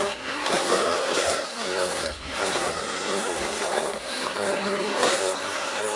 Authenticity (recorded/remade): remade